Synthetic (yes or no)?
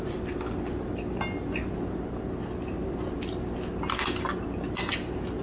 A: no